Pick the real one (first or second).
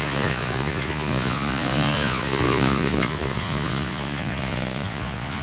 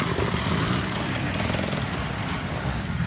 second